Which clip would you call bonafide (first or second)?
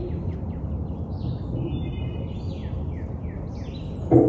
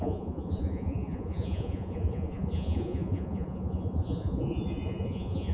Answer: first